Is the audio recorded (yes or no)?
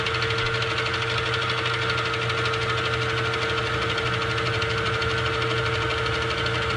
yes